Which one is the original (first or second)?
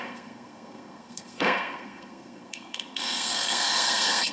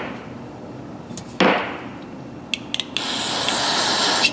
second